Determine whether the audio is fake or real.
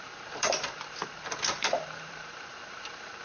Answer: fake